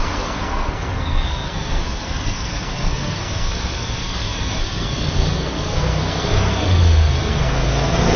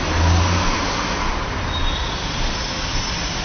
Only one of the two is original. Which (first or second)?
second